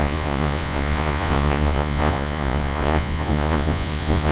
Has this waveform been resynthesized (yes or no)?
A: yes